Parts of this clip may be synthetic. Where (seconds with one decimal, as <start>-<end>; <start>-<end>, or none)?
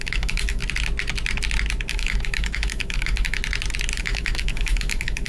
0.0-0.6; 1.9-3.4; 4.0-5.3